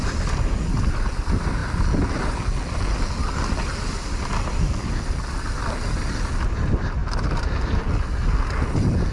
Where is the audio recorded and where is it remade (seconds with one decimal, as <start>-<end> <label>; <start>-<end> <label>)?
0.0-9.1 recorded